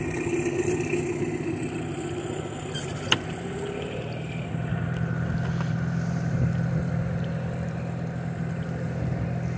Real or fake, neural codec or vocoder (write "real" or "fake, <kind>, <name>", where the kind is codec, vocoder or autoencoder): real